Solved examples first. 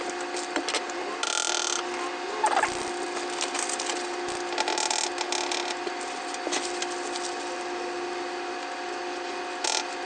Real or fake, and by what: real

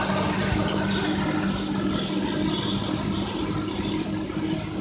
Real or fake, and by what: real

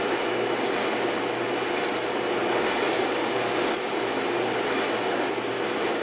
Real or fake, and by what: real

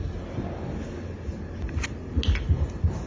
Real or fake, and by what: real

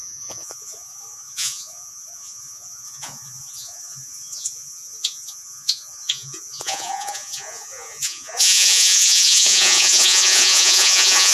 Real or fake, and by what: fake, vocoder, Vocos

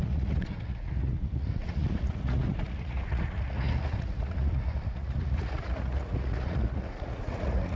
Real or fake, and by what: fake, vocoder, Vocos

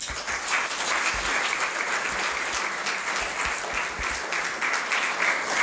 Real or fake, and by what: real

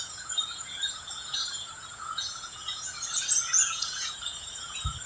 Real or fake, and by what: fake, vocoder, Vocos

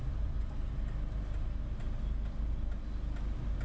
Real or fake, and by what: real